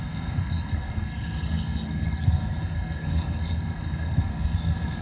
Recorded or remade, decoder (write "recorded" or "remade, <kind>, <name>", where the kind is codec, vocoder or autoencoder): remade, codec, SNAC